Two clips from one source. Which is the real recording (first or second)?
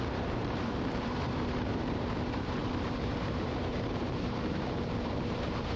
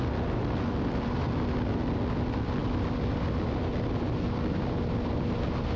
second